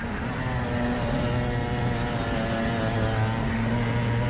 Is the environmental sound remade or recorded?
recorded